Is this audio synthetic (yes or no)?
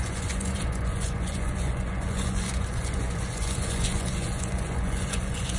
yes